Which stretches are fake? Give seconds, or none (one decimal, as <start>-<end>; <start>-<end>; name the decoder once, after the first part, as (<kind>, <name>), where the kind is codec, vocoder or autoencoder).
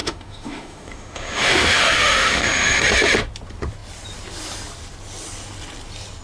0.0-2.8 (autoencoder, DAC-VAE)